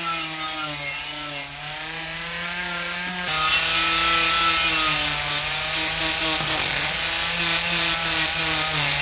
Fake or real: real